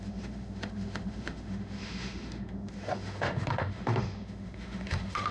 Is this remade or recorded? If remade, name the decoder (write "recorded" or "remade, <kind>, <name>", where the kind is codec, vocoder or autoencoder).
remade, autoencoder, DAC-VAE